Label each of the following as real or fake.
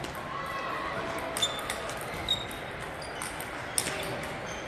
real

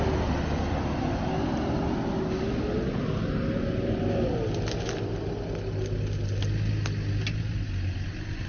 real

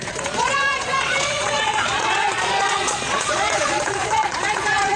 fake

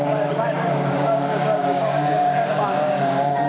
fake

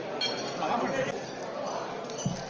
real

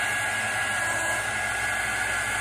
real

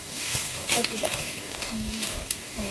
fake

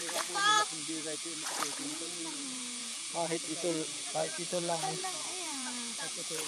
fake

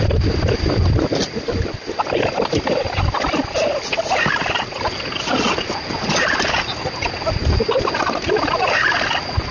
real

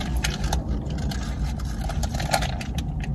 real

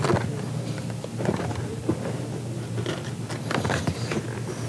real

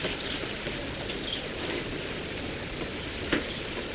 real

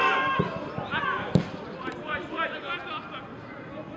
real